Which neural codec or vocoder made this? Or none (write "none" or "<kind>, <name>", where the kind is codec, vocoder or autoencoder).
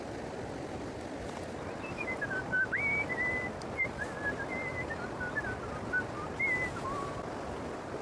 none